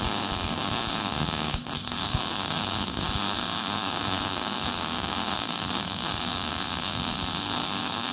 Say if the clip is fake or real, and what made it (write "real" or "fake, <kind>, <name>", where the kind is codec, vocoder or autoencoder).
fake, codec, DAC